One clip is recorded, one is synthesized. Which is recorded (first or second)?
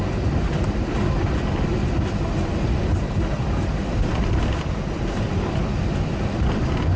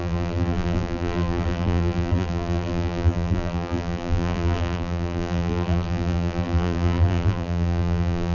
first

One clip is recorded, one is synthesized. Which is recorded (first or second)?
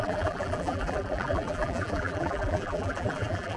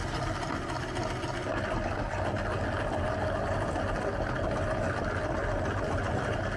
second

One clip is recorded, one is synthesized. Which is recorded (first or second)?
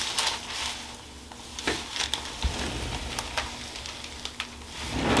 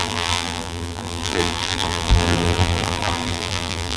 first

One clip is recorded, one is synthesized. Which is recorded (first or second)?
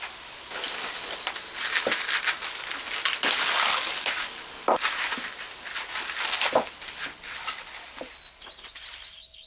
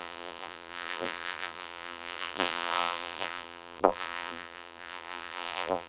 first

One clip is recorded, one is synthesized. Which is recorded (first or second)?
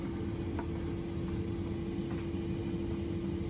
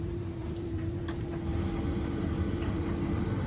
first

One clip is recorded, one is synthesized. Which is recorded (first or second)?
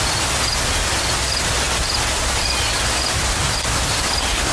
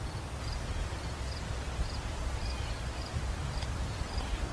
first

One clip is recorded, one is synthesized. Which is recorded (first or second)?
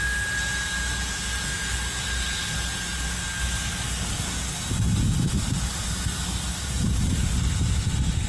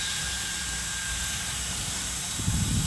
first